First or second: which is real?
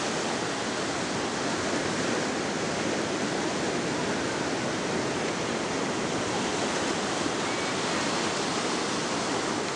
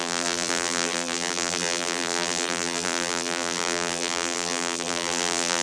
first